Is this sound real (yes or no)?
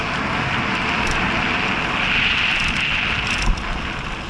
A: yes